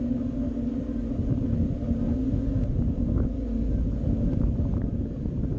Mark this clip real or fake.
real